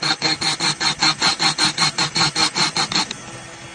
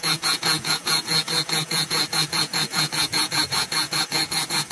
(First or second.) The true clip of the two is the first